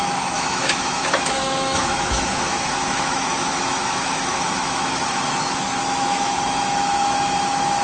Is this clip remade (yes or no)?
yes